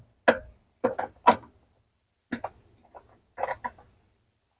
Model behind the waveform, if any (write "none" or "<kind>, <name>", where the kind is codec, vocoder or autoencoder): none